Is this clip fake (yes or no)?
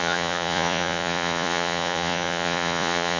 yes